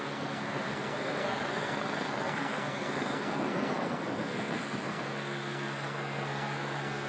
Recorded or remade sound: remade